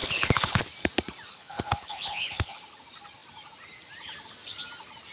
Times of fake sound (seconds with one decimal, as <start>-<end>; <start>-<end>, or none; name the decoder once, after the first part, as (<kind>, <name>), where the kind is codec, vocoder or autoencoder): 0.0-0.6 (codec, HILCodec); 1.3-2.6